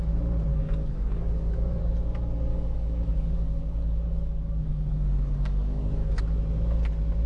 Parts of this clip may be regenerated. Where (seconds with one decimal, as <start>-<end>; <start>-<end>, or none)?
0.5-1.8; 2.5-6.2